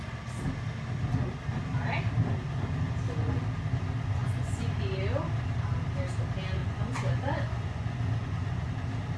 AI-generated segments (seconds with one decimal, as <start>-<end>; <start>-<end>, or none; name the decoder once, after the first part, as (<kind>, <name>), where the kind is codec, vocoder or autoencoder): 4.2-4.7 (vocoder, Vocos); 6.6-8.7